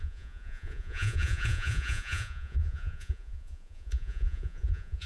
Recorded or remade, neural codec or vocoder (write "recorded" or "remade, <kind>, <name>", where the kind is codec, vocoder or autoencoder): remade, vocoder, Vocos